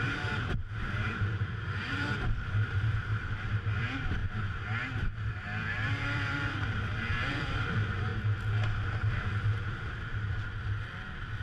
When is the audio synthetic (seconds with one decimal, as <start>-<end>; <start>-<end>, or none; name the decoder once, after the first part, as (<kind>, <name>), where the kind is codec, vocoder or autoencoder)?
0.0-4.2 (vocoder, BigVGAN v2); 5.3-8.1; 8.9-11.4